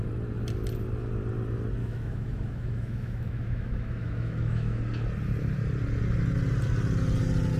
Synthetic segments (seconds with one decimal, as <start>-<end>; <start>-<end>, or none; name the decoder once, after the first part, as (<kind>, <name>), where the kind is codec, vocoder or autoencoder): 1.8-4.8 (autoencoder, DAC-VAE)